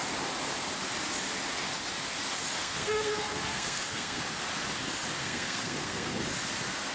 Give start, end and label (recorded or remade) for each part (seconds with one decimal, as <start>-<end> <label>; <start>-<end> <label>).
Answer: 0.0-2.6 recorded; 2.6-4.2 remade; 4.2-5.2 recorded; 5.2-6.2 remade; 6.2-6.9 recorded